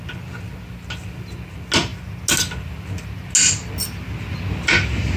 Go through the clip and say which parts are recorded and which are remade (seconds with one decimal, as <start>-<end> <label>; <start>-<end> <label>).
0.0-5.2 recorded